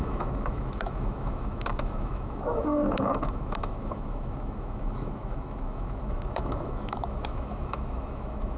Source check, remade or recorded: remade